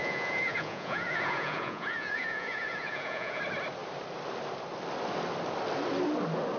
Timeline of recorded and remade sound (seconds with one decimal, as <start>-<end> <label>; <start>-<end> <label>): 0.0-3.4 remade; 3.4-6.6 recorded